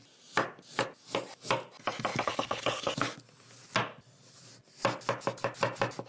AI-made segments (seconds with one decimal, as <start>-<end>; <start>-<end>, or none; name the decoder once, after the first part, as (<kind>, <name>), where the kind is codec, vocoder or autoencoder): 2.1-2.9 (codec, HILCodec)